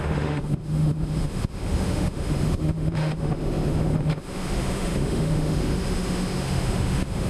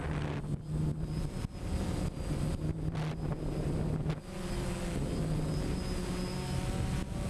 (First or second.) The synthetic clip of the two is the first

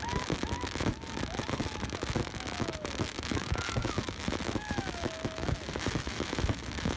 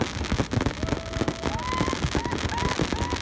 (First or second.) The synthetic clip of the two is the first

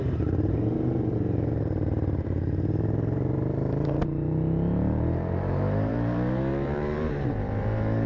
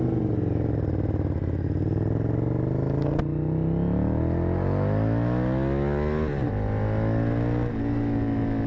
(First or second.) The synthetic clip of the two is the first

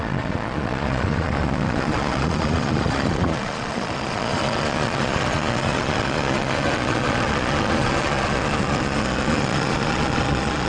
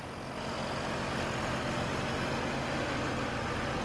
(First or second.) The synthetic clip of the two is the first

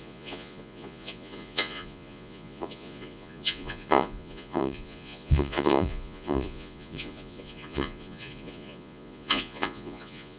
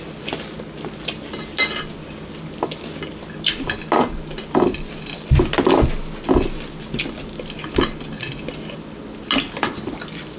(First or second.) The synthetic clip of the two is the first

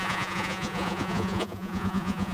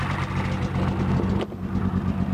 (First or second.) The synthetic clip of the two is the first